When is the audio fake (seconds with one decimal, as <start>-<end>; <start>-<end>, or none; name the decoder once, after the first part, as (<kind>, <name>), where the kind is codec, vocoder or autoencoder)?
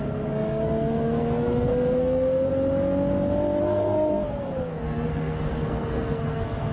0.0-2.5 (codec, SNAC); 3.6-6.7